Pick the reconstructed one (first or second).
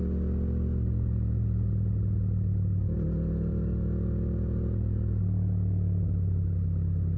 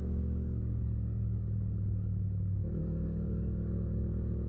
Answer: second